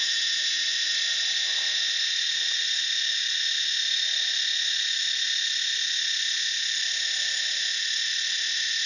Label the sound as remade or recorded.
recorded